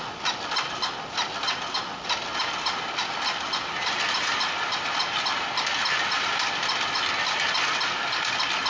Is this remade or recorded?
recorded